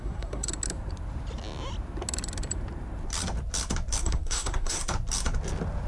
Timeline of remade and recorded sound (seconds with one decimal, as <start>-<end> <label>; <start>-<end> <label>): 0.0-0.5 remade; 0.5-4.0 recorded; 4.0-4.8 remade; 4.8-5.9 recorded